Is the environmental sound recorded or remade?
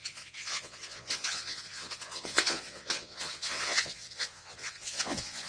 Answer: remade